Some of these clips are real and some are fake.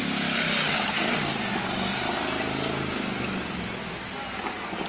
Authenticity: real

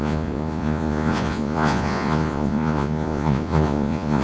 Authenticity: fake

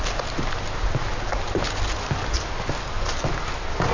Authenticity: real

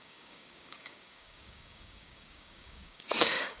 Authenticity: fake